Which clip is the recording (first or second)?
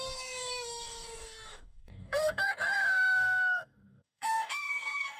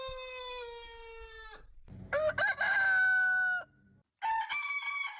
second